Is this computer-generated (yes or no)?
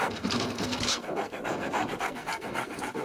yes